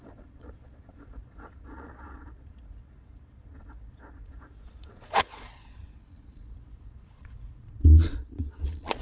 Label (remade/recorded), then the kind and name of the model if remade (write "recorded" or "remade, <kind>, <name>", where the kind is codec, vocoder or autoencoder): remade, vocoder, Vocos